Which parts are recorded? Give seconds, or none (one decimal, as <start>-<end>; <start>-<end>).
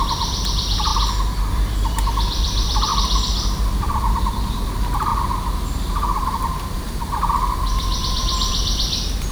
0.9-1.5; 2.9-3.7; 5.1-6.3